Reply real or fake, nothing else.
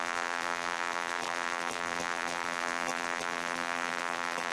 fake